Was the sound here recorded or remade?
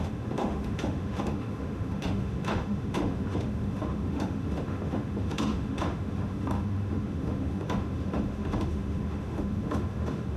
remade